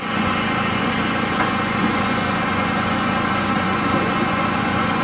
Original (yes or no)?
no